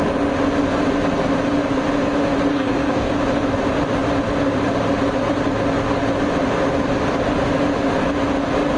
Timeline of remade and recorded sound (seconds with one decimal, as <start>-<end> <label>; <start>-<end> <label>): 0.0-2.5 recorded; 2.5-3.1 remade; 3.1-8.8 recorded